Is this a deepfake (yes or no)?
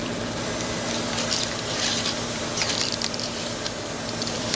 yes